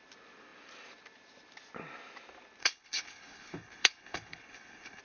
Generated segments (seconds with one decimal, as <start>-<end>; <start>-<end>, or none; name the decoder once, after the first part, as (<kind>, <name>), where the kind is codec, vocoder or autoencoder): 2.6-5.0 (codec, HILCodec)